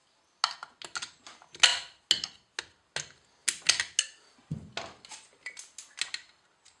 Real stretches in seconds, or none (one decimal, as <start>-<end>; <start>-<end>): 0.0-6.8